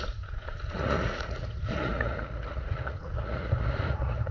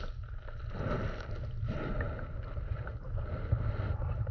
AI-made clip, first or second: first